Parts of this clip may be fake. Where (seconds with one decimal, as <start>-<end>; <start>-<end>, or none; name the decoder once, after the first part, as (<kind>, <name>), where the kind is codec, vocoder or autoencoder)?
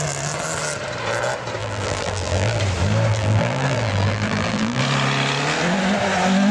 1.6-2.6 (vocoder, BigVGAN v2); 3.1-4.8